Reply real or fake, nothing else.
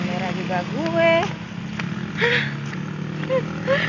real